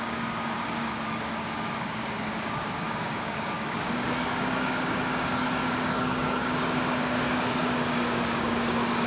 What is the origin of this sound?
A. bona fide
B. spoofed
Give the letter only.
B